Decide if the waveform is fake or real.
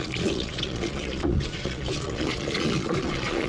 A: fake